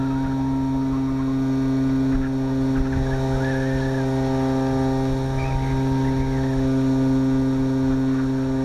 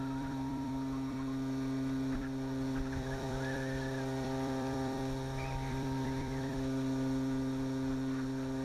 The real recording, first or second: first